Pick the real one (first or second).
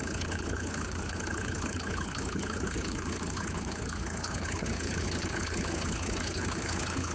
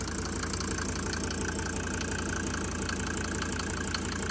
second